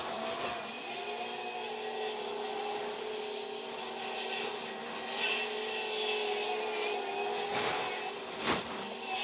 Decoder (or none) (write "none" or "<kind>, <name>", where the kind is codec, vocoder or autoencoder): none